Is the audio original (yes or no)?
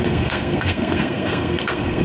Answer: no